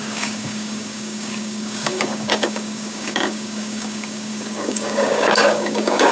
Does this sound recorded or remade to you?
remade